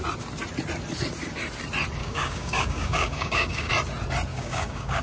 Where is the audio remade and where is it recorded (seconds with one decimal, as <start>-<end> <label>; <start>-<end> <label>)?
0.0-2.0 recorded; 2.0-3.7 remade; 3.7-4.3 recorded; 4.3-5.0 remade